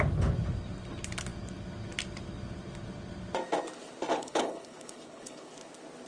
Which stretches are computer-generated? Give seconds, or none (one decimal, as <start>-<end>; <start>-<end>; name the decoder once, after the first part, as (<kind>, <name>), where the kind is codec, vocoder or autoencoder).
4.1-5.5 (codec, HILCodec)